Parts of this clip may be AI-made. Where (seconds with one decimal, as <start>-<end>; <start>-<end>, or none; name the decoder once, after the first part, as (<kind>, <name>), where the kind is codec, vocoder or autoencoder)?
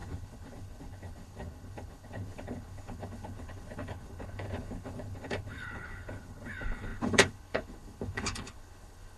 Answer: 0.0-9.2 (codec, HILCodec)